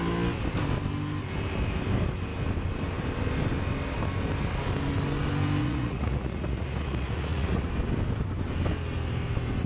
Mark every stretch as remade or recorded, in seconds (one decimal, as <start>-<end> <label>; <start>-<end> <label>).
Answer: 0.0-5.6 recorded; 5.6-7.7 remade; 7.7-9.7 recorded